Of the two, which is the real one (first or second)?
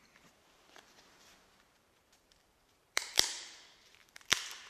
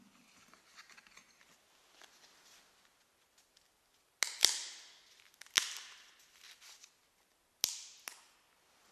second